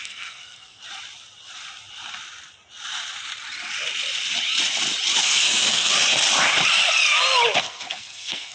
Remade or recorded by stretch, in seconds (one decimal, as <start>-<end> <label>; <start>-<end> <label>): 0.0-0.8 remade; 0.8-5.2 recorded; 5.2-5.9 remade; 5.9-7.6 recorded; 7.6-8.5 remade